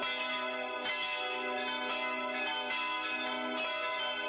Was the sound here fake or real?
real